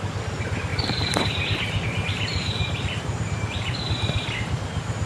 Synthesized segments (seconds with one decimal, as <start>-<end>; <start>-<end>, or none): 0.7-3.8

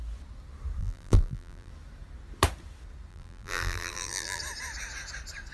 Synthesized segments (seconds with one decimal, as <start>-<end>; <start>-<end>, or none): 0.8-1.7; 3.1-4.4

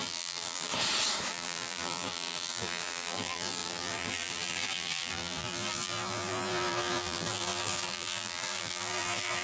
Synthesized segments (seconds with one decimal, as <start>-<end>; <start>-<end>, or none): 0.0-0.7; 1.3-9.4

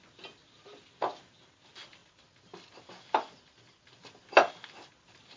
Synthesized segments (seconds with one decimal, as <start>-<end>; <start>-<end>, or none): none

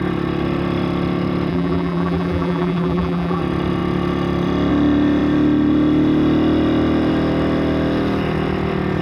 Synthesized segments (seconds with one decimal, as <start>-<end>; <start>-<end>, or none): 1.5-3.4

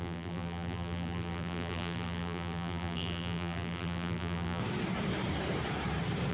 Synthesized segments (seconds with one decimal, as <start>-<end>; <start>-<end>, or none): 0.0-4.6

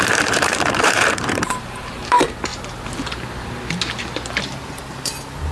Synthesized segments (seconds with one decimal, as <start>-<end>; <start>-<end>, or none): 0.0-2.5; 4.7-5.5

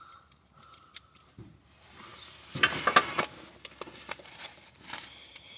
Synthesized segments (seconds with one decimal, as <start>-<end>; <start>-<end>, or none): 0.0-2.1; 4.4-5.6